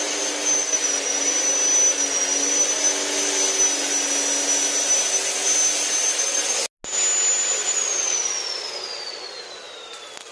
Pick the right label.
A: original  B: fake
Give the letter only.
A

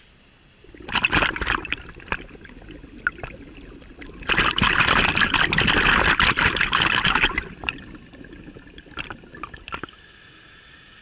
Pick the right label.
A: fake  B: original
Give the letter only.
B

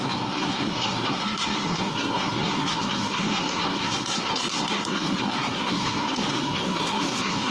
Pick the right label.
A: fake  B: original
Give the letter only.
A